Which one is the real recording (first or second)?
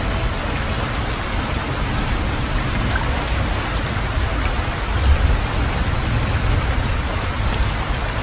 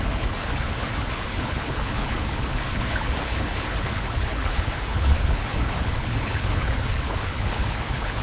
first